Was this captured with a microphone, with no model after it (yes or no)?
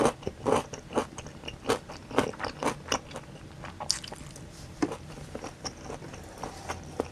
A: no